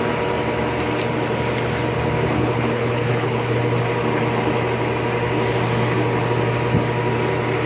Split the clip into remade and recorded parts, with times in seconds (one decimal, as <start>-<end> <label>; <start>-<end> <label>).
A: 0.0-2.3 recorded; 2.3-3.6 remade; 3.6-7.7 recorded